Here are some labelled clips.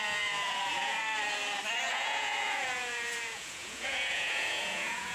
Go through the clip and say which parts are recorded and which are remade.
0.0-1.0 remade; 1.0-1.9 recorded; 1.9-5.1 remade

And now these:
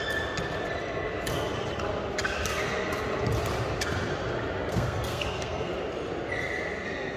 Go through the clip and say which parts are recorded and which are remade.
0.0-4.7 recorded; 4.7-5.7 remade; 5.7-7.2 recorded

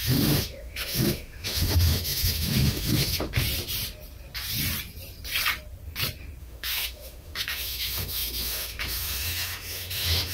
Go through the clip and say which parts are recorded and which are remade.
0.0-3.4 remade; 3.4-6.4 recorded; 6.4-10.3 remade

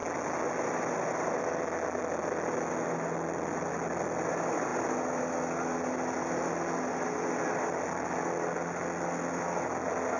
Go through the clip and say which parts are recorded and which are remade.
0.0-10.2 recorded

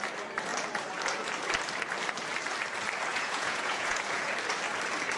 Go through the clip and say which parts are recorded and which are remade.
0.0-3.1 recorded; 3.1-4.3 remade; 4.3-5.2 recorded

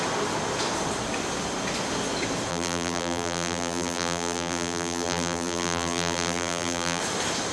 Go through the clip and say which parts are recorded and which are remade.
0.0-2.5 recorded; 2.5-7.0 remade; 7.0-7.5 recorded

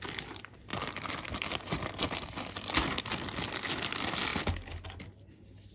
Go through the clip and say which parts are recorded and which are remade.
0.0-5.7 recorded

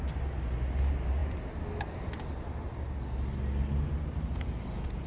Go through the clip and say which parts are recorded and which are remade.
0.0-5.1 recorded